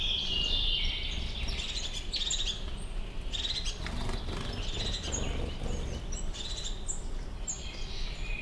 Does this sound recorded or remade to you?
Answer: recorded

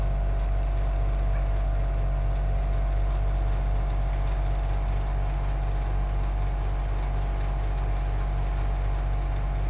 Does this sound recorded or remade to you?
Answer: recorded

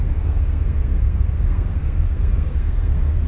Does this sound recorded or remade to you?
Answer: remade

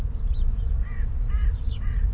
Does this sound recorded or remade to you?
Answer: remade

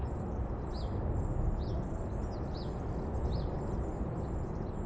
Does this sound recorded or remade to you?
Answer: recorded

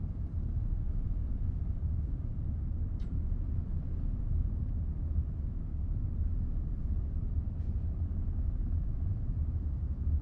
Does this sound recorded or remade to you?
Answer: remade